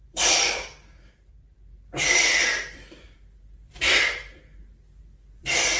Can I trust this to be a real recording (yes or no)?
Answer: no